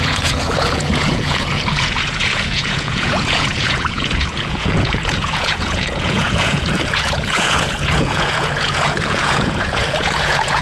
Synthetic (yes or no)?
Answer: yes